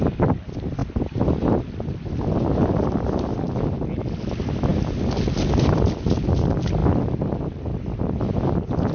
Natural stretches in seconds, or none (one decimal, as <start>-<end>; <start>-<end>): 0.0-8.9